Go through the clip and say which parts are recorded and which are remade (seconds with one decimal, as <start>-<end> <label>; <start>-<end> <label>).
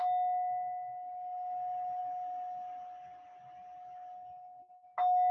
0.0-5.3 recorded